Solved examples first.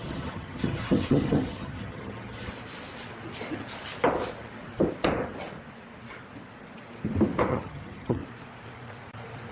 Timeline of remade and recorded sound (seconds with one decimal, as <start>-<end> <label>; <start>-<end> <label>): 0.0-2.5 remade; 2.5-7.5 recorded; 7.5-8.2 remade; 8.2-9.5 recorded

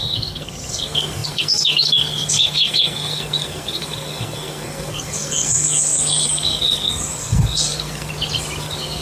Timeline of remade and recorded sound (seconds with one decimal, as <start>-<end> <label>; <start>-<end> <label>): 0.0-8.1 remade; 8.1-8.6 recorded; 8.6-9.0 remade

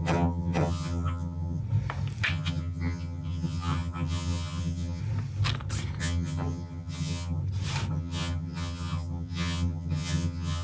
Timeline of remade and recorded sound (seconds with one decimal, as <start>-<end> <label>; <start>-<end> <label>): 0.0-1.6 remade; 1.6-2.3 recorded; 2.3-5.0 remade; 5.0-6.0 recorded; 6.0-7.4 remade; 7.4-7.9 recorded; 7.9-10.6 remade

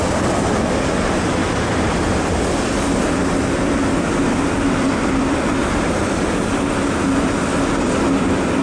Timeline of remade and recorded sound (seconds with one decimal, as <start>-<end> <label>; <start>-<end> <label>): 0.0-5.6 recorded; 5.6-6.5 remade; 6.5-8.6 recorded

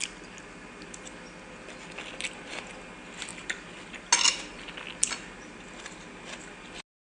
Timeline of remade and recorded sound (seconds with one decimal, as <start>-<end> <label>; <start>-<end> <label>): 0.0-7.2 recorded

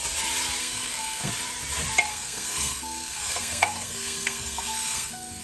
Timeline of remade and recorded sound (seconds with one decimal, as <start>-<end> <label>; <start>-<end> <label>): 0.0-0.6 recorded; 0.6-1.3 remade; 1.3-2.1 recorded; 2.1-5.4 remade

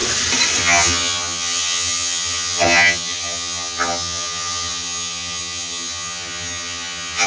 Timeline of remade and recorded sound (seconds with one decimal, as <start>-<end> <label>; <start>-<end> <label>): 0.0-0.6 recorded; 0.6-7.3 remade